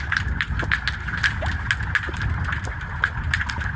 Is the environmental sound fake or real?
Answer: real